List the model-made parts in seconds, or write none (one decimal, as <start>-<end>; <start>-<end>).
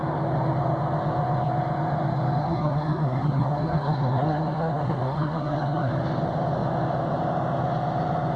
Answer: 2.4-5.9